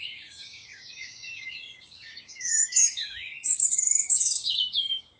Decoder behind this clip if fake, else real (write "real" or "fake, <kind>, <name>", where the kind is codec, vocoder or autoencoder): fake, codec, DAC